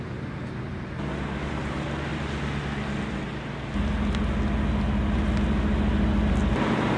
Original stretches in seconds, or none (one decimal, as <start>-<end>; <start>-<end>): 0.0-7.0